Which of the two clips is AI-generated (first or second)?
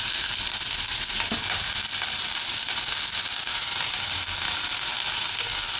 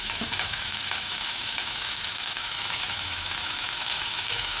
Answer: second